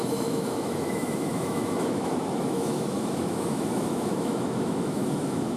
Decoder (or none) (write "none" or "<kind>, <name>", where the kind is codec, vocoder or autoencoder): autoencoder, DAC-VAE